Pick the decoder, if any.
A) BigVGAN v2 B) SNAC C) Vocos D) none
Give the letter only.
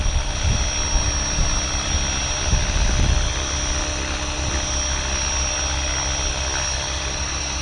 D